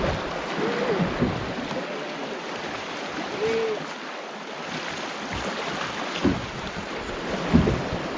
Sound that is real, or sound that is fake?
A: real